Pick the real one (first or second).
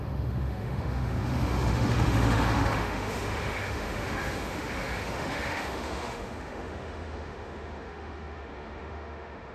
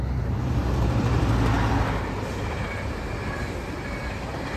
second